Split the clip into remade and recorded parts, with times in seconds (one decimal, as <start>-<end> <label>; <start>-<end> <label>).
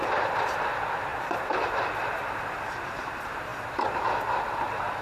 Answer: 0.0-3.5 remade; 3.5-4.4 recorded; 4.4-5.0 remade